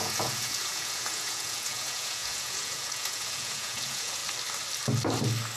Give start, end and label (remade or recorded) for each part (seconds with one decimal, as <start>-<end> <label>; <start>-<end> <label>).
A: 0.0-4.2 remade; 4.2-5.6 recorded

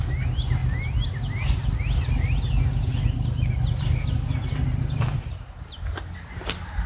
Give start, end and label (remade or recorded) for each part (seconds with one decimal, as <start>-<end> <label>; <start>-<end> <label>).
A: 0.0-6.9 recorded